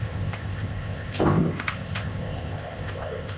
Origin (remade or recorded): remade